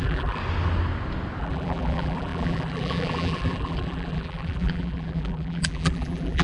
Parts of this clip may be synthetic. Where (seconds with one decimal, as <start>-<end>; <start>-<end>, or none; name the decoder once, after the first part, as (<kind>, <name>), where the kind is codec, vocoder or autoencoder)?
0.0-0.4 (vocoder, BigVGAN v2); 1.4-6.4

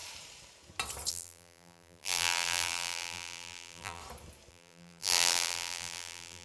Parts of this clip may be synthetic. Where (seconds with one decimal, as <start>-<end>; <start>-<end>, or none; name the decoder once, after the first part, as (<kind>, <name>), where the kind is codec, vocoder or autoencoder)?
1.1-4.0 (vocoder, BigVGAN v2); 4.5-6.4

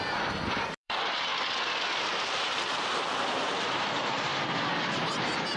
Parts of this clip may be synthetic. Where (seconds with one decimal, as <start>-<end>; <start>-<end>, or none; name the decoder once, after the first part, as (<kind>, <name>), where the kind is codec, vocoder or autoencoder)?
0.0-1.3 (vocoder, BigVGAN v2); 2.0-4.3

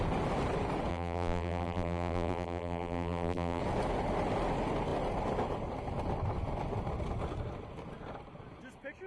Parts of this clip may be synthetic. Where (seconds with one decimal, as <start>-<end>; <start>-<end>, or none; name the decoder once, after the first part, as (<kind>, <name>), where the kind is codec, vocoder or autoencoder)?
0.9-3.6 (vocoder, BigVGAN v2)

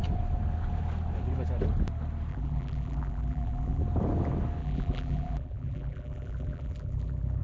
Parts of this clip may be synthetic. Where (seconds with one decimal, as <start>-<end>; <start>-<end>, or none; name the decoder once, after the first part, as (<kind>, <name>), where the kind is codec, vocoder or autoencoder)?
2.3-3.8 (vocoder, BigVGAN v2); 4.6-7.4

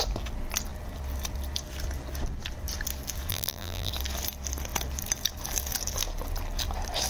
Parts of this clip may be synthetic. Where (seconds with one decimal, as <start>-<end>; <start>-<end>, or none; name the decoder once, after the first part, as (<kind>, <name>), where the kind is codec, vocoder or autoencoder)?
3.3-3.9 (vocoder, BigVGAN v2)

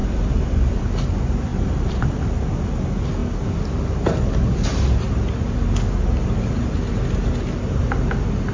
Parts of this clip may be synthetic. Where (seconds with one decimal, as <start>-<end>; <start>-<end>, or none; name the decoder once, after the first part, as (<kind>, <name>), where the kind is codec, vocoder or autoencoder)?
0.0-0.8 (vocoder, BigVGAN v2); 1.5-2.2

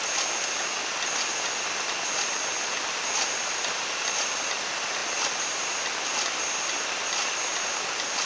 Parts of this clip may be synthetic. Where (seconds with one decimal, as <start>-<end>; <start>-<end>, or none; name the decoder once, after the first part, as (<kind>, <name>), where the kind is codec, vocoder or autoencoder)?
none